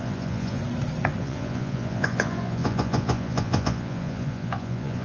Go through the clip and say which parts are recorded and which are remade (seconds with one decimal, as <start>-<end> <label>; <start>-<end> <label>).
0.0-0.6 remade; 0.6-1.2 recorded; 1.2-5.0 remade